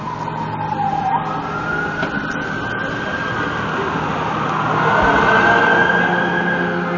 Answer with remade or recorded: recorded